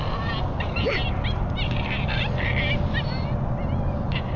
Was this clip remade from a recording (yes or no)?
no